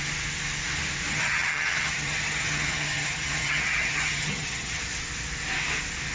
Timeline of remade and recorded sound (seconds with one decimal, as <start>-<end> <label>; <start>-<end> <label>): 0.0-1.1 recorded; 1.1-4.8 remade; 4.8-6.1 recorded